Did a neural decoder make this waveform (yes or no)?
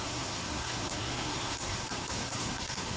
yes